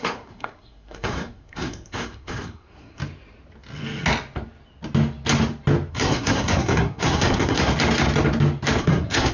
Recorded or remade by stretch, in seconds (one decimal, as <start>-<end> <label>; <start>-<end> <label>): 0.0-3.0 remade; 3.0-5.9 recorded; 5.9-7.7 remade; 7.7-8.8 recorded; 8.8-9.3 remade